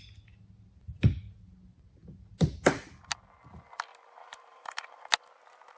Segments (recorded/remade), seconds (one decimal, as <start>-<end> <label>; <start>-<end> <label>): 0.0-3.9 recorded; 3.9-5.0 remade; 5.0-5.8 recorded